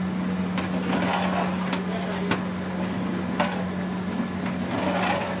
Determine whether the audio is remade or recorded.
recorded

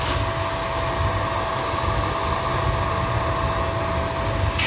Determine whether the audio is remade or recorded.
recorded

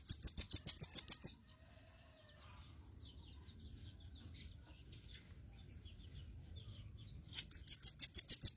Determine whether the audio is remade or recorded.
recorded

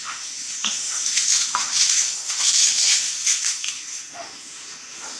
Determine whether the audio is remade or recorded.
remade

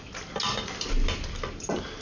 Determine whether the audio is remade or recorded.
recorded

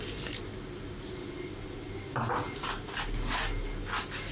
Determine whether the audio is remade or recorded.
recorded